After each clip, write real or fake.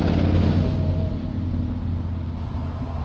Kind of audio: real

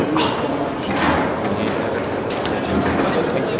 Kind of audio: real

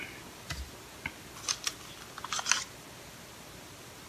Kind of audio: real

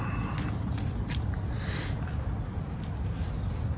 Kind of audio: real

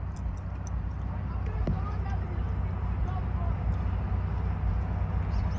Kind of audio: real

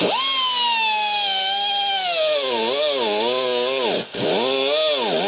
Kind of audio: real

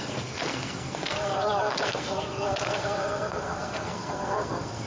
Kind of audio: fake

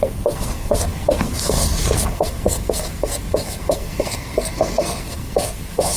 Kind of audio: fake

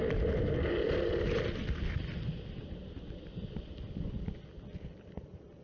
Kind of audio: real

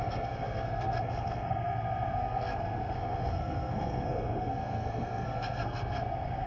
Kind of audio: fake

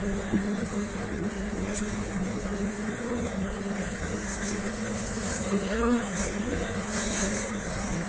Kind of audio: fake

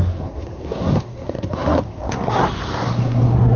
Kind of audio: fake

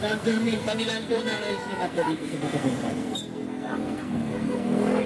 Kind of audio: fake